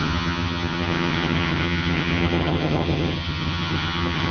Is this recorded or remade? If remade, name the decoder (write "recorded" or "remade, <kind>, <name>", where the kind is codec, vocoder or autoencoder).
remade, vocoder, HiFi-GAN